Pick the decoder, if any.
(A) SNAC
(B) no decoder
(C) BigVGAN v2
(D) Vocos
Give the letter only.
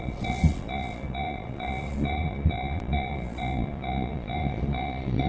D